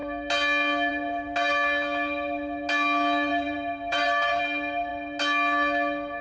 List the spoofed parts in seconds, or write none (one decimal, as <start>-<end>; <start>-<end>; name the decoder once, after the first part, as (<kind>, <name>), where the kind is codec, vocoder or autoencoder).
3.3-4.4 (vocoder, BigVGAN v2)